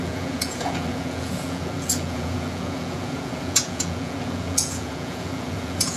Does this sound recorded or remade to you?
remade